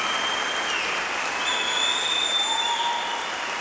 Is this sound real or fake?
real